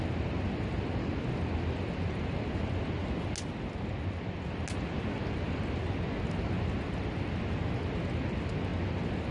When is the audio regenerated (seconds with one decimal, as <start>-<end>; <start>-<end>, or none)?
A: none